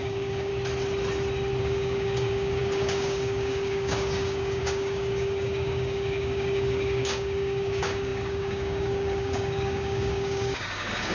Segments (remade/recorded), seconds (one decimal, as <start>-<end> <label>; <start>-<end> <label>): 0.0-0.5 remade; 0.5-1.6 recorded; 1.6-11.1 remade